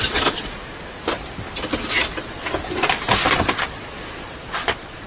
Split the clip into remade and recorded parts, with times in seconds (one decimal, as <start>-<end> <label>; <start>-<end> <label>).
0.0-0.6 remade; 0.6-3.7 recorded; 3.7-5.1 remade